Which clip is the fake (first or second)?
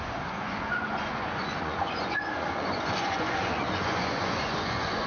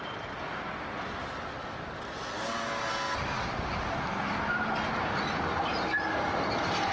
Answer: first